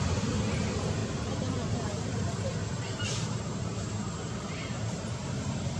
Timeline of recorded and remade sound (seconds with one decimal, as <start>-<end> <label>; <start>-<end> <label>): 0.0-1.0 remade; 1.0-1.7 recorded; 1.7-2.5 remade; 2.5-3.1 recorded; 3.1-5.8 remade